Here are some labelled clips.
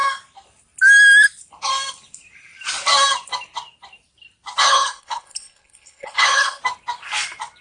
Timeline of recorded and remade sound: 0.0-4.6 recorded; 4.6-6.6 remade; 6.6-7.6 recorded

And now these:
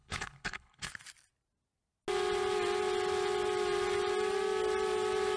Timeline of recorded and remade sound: 0.0-0.9 remade; 0.9-5.4 recorded

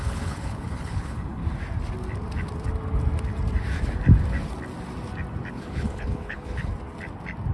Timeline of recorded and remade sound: 0.0-1.4 remade; 1.4-5.5 recorded; 5.5-6.7 remade; 6.7-7.5 recorded

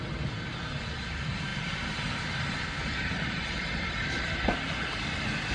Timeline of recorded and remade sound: 0.0-5.5 recorded

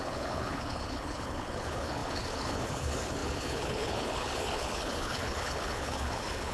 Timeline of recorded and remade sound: 0.0-6.5 remade

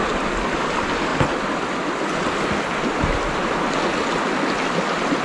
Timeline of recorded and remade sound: 0.0-5.2 recorded

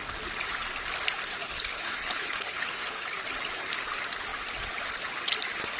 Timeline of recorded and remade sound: 0.0-1.3 recorded; 1.3-3.2 remade; 3.2-5.8 recorded

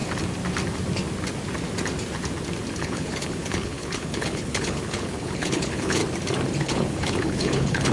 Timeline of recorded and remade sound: 0.0-2.8 recorded; 2.8-6.0 remade; 6.0-6.6 recorded; 6.6-7.9 remade